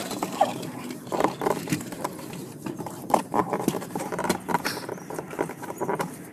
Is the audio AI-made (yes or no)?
yes